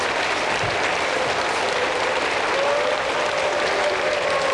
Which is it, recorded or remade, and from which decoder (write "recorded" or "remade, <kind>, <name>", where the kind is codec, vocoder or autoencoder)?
remade, vocoder, BigVGAN v2